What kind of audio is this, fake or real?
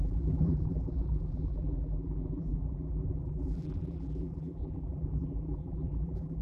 fake